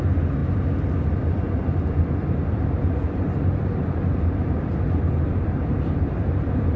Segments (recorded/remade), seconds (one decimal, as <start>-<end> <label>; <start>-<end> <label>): 0.0-6.8 remade